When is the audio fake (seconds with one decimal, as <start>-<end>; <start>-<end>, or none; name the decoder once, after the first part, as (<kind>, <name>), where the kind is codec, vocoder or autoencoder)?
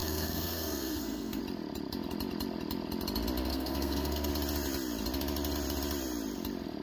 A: 0.0-1.4 (codec, SNAC); 3.5-4.3